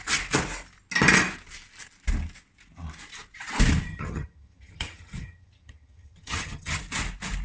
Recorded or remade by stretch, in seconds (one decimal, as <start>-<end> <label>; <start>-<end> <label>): 0.0-3.9 recorded; 3.9-6.8 remade; 6.8-7.4 recorded